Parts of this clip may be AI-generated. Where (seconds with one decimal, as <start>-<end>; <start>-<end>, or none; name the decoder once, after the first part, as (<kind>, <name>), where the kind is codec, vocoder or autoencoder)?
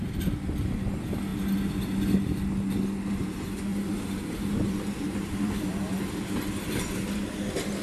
3.7-6.0 (vocoder, BigVGAN v2)